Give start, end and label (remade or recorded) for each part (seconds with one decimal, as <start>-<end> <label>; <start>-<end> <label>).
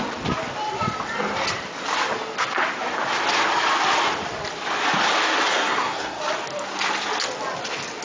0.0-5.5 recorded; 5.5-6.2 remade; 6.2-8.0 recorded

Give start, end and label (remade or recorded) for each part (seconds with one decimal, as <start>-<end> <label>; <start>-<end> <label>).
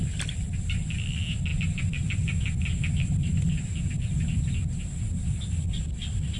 0.0-6.4 recorded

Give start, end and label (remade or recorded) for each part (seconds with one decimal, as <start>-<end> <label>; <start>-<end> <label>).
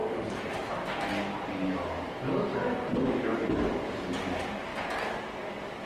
0.0-5.9 recorded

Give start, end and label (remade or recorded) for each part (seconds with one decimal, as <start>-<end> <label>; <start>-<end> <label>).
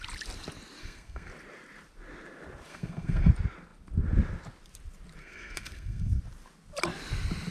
0.0-0.8 recorded; 0.8-1.3 remade; 1.3-2.7 recorded; 2.7-3.3 remade; 3.3-5.2 recorded; 5.2-6.2 remade; 6.2-7.5 recorded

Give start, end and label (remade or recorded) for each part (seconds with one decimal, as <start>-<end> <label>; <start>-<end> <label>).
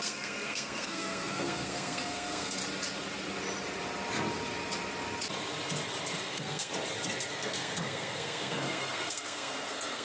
0.0-2.6 remade; 2.6-6.2 recorded; 6.2-6.7 remade; 6.7-7.3 recorded; 7.3-10.0 remade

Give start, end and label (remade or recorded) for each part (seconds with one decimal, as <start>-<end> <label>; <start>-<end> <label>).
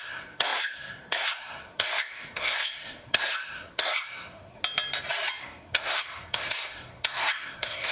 0.0-4.6 remade; 4.6-5.4 recorded; 5.4-7.9 remade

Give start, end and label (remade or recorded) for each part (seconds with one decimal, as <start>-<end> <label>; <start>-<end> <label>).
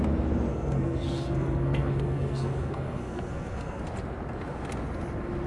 0.0-0.5 recorded; 0.5-3.8 remade; 3.8-5.5 recorded